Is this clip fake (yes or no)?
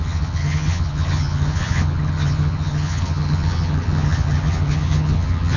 yes